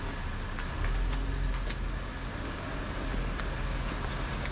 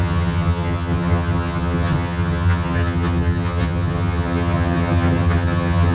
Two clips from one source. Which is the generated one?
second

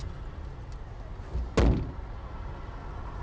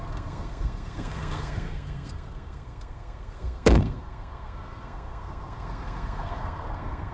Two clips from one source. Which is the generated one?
second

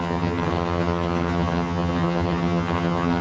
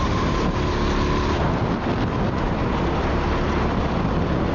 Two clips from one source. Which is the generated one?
first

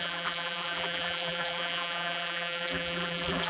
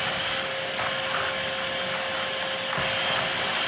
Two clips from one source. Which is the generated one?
first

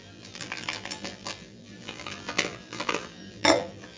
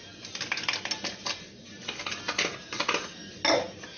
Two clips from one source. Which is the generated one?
first